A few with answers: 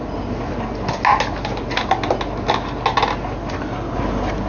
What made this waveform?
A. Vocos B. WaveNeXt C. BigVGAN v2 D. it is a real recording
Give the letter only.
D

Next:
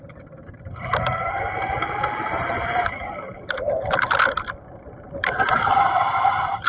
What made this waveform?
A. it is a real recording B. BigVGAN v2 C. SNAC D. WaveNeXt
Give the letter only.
B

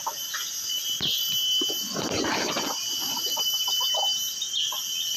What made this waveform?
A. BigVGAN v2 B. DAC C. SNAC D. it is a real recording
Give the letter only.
D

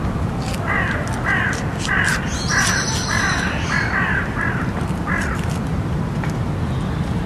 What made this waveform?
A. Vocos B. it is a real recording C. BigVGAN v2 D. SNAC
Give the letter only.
B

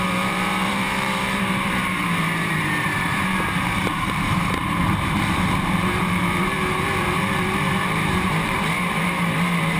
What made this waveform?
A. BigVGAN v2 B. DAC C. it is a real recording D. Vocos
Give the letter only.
A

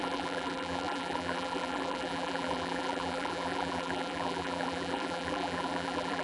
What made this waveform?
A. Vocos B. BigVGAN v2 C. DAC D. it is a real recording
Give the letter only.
B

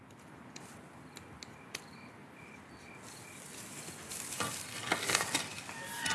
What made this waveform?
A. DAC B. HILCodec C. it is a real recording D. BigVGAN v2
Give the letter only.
C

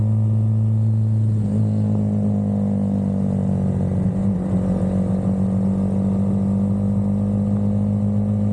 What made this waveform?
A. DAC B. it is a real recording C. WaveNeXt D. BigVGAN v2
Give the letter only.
B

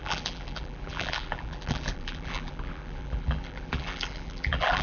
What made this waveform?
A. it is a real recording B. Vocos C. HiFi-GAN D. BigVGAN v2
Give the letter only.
D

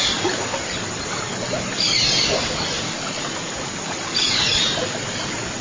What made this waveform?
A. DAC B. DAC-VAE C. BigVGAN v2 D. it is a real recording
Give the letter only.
C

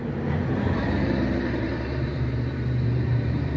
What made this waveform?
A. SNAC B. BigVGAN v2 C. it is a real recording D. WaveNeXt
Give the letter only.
B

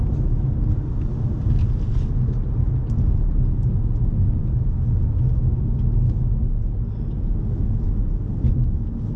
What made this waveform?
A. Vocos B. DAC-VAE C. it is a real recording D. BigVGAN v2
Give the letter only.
C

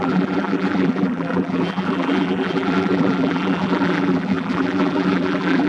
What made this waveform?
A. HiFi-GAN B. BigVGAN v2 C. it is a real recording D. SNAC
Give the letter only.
B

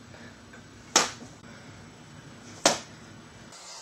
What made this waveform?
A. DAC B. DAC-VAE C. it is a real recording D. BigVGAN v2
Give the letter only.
C